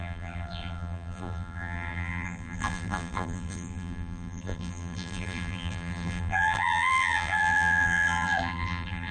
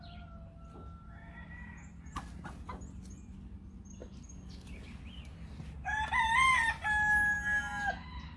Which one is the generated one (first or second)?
first